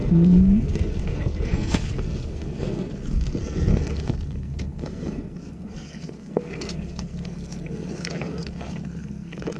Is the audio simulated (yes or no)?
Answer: yes